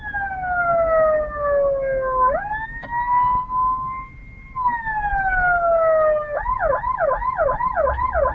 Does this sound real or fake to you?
real